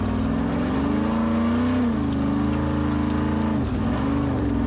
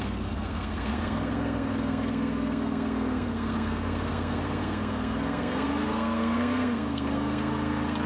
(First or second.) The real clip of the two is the first